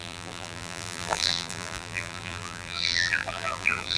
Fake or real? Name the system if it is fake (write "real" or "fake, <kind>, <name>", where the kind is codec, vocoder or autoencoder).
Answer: fake, vocoder, BigVGAN v2